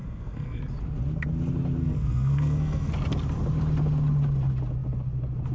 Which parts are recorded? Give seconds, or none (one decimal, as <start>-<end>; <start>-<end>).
0.6-1.8; 2.9-5.5